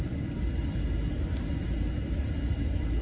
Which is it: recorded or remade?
recorded